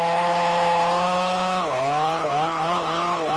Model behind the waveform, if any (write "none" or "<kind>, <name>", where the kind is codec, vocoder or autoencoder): codec, HILCodec